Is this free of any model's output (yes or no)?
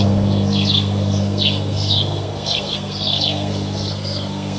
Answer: no